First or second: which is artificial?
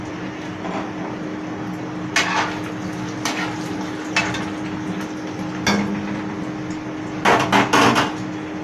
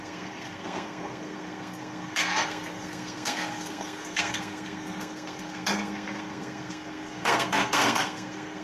second